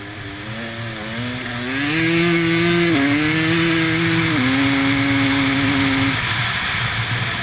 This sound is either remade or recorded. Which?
recorded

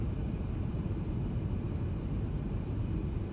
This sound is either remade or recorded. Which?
remade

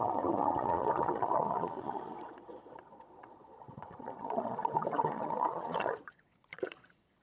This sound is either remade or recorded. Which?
remade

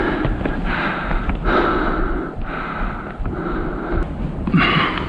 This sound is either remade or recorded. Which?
recorded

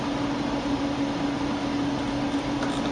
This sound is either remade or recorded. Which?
recorded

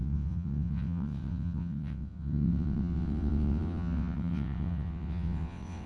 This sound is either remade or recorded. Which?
remade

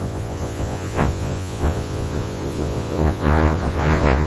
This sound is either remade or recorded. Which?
remade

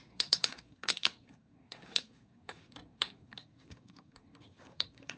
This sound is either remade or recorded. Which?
remade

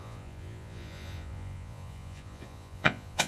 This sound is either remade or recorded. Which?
remade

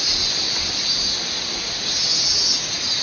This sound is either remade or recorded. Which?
recorded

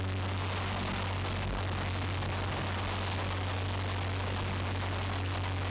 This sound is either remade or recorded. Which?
recorded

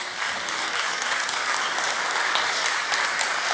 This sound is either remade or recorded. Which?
remade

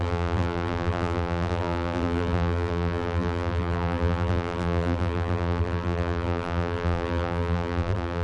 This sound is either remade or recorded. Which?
remade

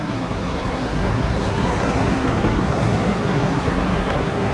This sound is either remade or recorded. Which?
remade